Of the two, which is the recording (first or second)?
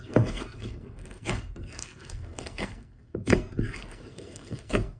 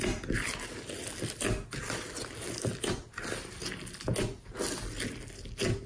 second